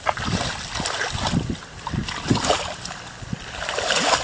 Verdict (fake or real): real